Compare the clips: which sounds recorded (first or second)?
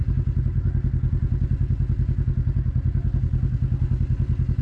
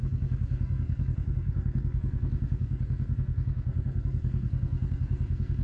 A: first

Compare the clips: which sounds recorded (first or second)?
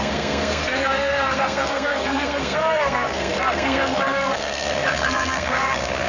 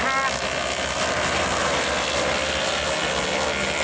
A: second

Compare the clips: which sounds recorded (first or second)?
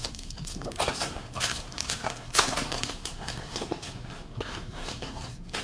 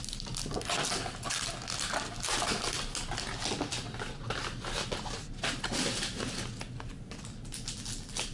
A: second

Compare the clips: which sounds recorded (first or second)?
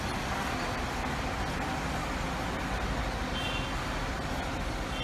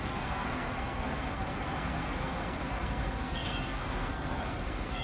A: first